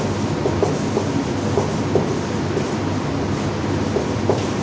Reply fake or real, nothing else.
real